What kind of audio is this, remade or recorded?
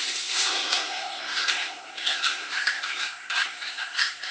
remade